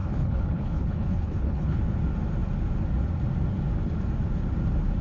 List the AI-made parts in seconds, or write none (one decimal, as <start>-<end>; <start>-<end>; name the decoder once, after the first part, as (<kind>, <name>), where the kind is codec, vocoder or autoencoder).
0.0-1.8 (codec, HILCodec)